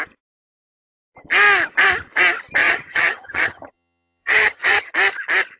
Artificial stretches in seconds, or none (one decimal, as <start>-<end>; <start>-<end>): 2.6-4.9